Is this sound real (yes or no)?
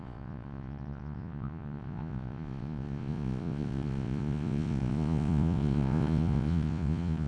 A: no